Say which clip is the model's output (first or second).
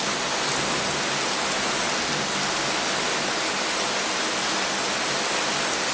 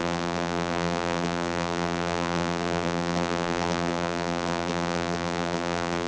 second